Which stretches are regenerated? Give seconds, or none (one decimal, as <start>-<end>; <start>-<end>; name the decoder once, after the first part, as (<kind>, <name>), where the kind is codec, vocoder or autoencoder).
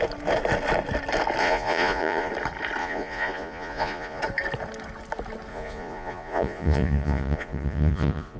1.4-2.3 (vocoder, Vocos); 2.8-4.2; 5.5-8.4